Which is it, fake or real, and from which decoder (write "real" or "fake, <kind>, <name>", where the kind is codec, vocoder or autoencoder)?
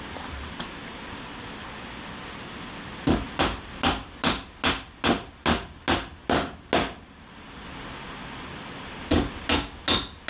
real